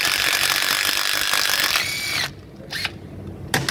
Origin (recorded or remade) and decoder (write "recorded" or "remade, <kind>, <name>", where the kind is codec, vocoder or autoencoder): recorded